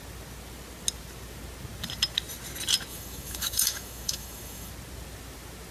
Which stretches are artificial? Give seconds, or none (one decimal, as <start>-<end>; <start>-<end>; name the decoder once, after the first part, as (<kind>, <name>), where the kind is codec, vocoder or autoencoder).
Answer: 2.9-4.7 (autoencoder, DAC-VAE)